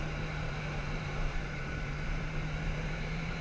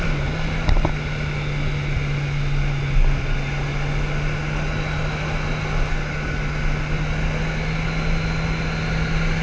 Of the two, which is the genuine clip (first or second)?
second